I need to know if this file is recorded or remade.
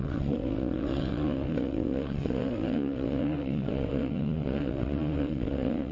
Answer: remade